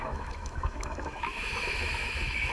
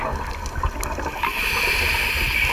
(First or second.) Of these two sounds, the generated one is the first